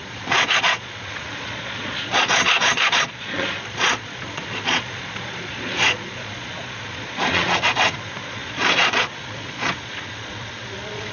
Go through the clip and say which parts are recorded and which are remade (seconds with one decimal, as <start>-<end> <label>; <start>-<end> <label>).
0.0-11.1 remade